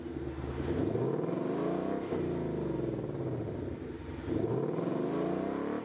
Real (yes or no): yes